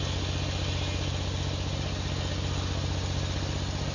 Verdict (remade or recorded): recorded